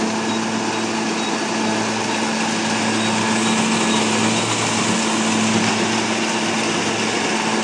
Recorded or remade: recorded